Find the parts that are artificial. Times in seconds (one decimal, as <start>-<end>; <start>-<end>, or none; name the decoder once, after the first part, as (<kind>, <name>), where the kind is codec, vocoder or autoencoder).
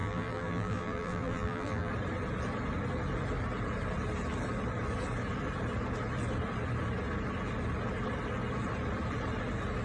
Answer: 0.0-1.9 (vocoder, BigVGAN v2)